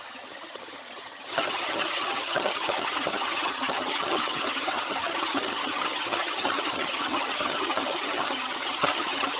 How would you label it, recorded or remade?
remade